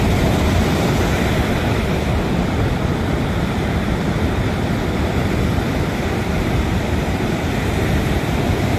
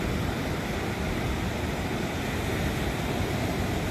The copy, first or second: first